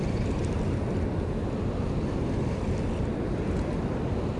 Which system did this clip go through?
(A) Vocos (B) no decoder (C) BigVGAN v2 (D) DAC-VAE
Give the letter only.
B